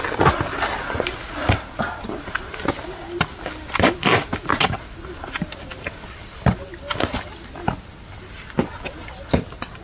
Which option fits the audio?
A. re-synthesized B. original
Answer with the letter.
B